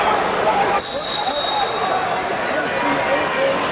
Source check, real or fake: real